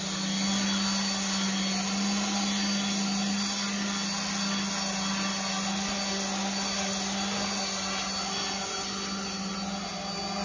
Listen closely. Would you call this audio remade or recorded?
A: recorded